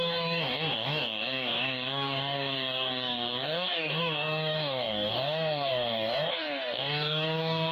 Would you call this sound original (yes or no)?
no